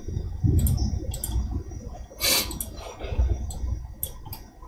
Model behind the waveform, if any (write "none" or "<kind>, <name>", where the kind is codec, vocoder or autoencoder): none